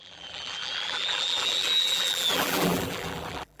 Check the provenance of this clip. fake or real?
fake